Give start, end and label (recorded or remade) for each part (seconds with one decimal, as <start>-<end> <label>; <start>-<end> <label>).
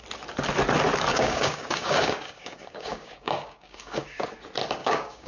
0.0-1.1 recorded; 1.1-4.3 remade; 4.3-4.8 recorded; 4.8-5.3 remade